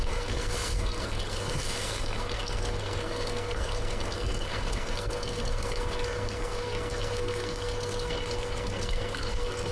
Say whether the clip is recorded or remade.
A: remade